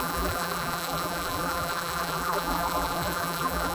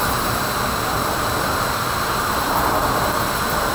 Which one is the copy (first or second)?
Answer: first